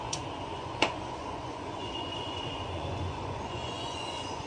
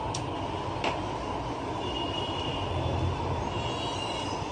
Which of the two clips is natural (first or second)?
second